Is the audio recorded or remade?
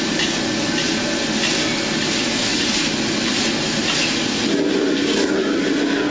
recorded